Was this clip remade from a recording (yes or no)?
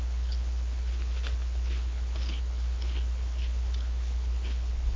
yes